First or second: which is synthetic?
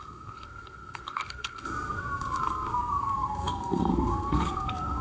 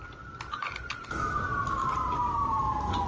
first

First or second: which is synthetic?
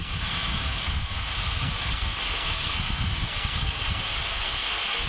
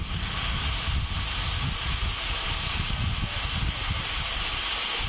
first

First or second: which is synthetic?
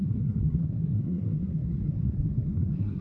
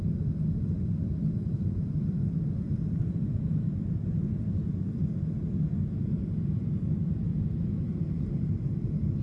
first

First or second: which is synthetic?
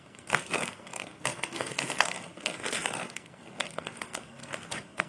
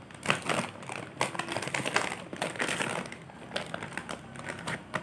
first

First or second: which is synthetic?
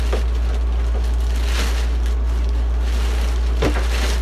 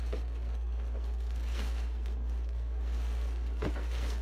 second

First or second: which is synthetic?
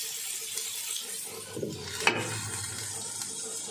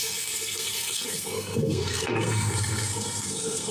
second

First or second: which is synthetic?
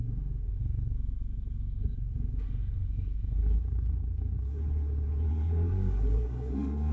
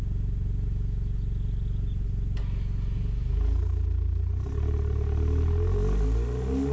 first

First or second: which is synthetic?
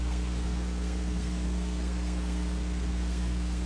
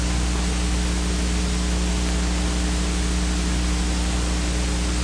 first